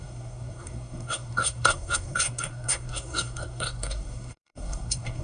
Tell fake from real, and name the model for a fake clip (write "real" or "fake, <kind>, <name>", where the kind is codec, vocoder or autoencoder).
fake, codec, SNAC